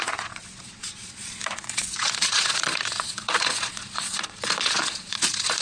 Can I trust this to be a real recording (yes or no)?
no